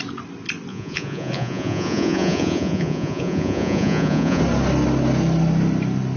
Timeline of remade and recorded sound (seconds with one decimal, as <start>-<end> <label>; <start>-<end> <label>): 0.0-0.7 recorded; 0.7-4.4 remade; 4.4-6.2 recorded